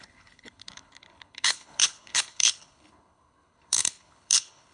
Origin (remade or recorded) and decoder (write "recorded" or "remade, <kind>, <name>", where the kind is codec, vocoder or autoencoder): remade, codec, HILCodec